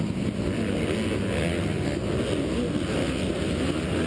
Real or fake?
real